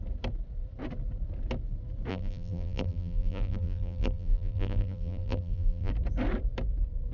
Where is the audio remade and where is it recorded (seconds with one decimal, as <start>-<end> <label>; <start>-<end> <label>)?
0.0-2.1 recorded; 2.1-5.9 remade; 5.9-7.1 recorded